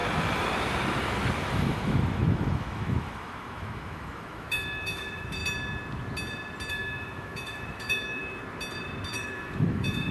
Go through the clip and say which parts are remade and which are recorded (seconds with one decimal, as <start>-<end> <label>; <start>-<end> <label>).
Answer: 0.0-1.5 recorded; 1.5-5.4 remade; 5.4-6.7 recorded; 6.7-8.2 remade; 8.2-9.1 recorded; 9.1-10.1 remade